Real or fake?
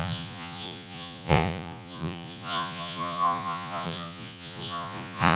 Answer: fake